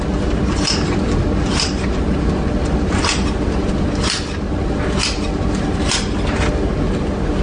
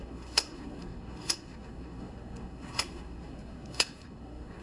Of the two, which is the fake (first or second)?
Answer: second